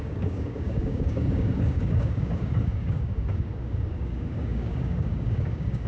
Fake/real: fake